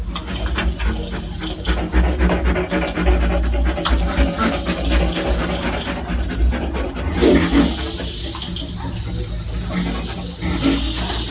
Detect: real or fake real